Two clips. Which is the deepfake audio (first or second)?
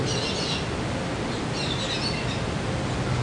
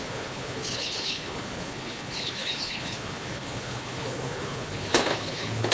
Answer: second